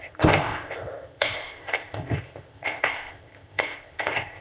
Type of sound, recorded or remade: remade